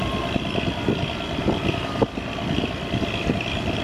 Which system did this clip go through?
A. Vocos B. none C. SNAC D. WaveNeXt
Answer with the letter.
B